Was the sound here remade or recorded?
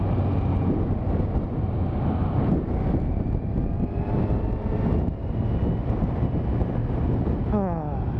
recorded